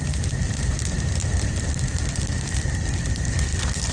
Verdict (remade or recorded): recorded